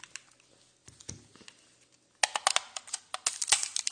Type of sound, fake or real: real